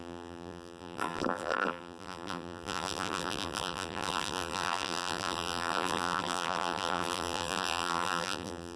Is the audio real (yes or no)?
no